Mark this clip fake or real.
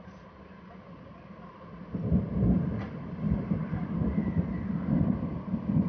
real